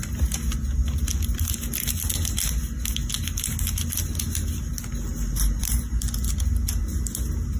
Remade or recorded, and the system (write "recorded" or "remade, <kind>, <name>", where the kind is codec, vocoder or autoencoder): recorded